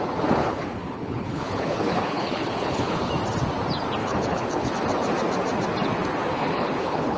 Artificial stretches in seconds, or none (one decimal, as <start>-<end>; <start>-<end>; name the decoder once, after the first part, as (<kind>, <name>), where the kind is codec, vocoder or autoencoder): 0.4-3.1 (codec, HILCodec); 4.0-4.7; 6.3-7.2